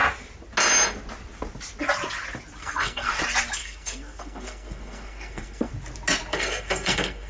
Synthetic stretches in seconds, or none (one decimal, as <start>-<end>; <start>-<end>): 2.6-3.2; 3.6-5.7; 6.3-7.3